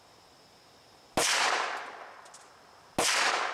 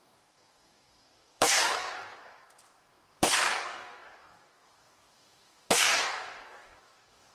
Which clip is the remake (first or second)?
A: second